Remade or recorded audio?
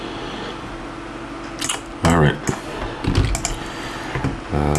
recorded